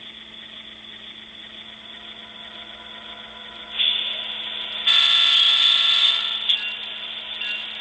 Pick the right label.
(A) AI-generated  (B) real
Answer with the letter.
B